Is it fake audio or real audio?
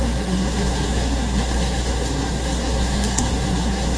fake